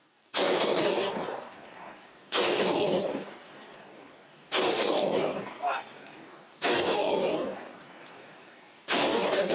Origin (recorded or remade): remade